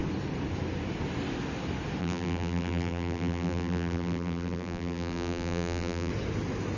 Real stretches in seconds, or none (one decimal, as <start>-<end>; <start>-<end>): 0.0-2.0; 6.1-6.8